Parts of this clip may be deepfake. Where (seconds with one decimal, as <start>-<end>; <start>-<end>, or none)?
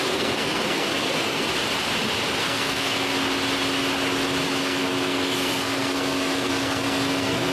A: 0.0-1.5; 2.4-3.1; 4.6-7.5